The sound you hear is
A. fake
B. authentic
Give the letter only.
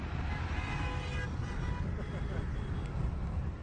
B